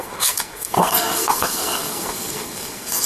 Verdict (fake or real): fake